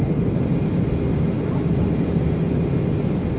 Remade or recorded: recorded